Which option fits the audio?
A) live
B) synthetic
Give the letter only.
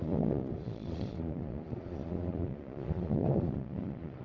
B